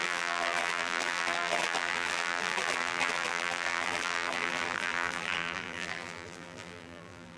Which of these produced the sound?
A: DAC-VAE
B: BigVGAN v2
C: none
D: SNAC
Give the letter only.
B